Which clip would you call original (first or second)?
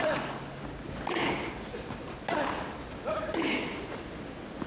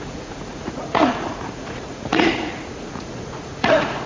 first